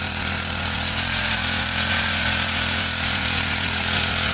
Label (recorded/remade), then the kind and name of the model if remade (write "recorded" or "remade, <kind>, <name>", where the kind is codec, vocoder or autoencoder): remade, vocoder, Vocos